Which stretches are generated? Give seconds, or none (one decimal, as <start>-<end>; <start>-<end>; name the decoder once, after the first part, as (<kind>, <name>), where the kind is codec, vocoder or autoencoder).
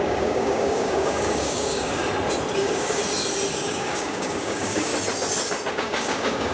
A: 0.0-2.0 (codec, DAC); 2.6-3.0; 3.5-4.9; 5.7-6.5